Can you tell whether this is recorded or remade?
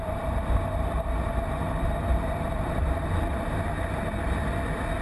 remade